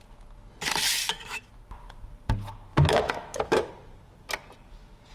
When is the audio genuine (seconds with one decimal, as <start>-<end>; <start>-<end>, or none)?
0.0-1.0; 1.5-2.7; 3.7-5.1